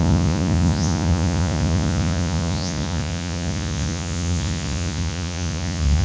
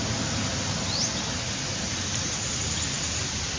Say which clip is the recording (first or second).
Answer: second